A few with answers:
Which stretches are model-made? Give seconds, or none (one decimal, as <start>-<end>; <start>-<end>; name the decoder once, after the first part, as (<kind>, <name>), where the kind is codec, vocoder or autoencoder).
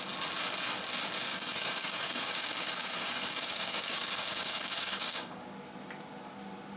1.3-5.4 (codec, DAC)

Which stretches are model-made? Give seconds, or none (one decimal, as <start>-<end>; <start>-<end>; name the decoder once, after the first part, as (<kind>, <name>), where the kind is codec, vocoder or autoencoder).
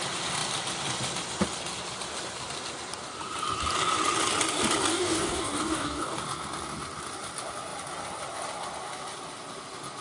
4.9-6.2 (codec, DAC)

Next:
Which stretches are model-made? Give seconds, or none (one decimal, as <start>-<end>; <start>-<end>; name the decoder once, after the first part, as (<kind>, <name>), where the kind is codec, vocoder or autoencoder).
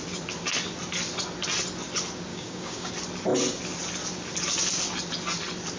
2.3-2.9 (codec, DAC)